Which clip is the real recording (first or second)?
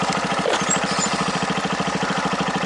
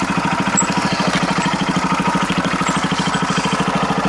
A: second